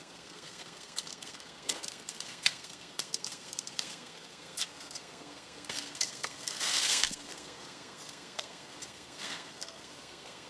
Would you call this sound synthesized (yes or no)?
yes